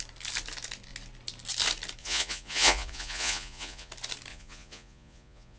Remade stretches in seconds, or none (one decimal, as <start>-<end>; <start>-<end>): 2.0-3.9; 4.3-5.6